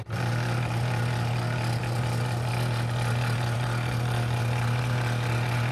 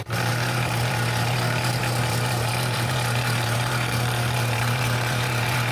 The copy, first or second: second